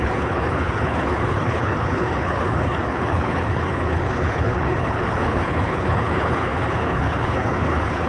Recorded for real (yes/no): no